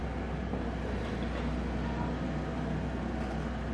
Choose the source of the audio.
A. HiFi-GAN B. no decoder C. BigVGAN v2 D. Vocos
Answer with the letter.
B